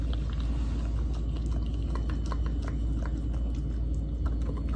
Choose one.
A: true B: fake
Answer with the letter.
A